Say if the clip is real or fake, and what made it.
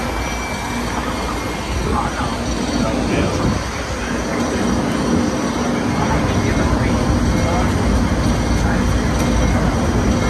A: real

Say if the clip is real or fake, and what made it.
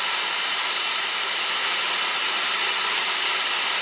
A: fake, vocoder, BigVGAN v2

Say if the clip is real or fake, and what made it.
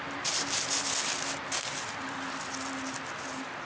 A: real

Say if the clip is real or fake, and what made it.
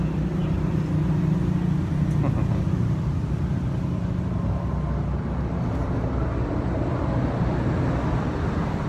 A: real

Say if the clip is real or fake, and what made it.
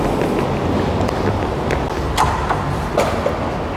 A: real